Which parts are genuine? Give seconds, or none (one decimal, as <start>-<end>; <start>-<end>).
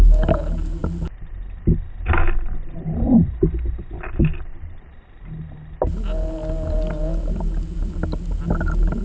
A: 0.0-9.0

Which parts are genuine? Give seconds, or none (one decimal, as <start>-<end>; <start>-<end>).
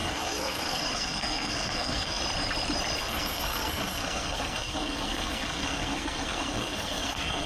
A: 2.2-3.0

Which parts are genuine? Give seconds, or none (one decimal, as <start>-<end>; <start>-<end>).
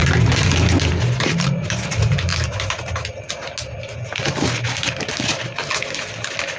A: 0.0-0.9; 2.3-6.6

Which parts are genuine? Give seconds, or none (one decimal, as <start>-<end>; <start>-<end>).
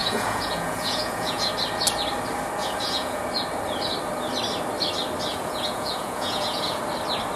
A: 1.5-2.6; 3.2-5.3; 6.8-7.4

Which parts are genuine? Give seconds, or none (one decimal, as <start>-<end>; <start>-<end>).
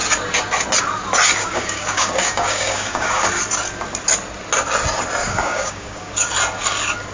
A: 0.0-1.4; 3.3-5.2; 6.1-7.1